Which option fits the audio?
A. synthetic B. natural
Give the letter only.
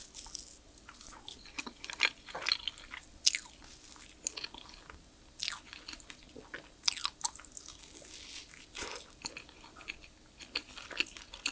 B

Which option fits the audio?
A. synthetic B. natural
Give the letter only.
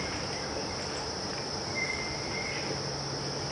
B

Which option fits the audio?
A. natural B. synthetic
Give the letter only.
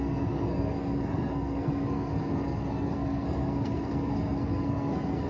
B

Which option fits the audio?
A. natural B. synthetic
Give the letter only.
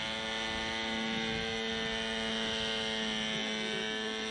A